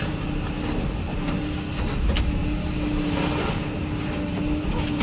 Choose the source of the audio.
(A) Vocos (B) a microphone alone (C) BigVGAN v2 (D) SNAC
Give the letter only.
B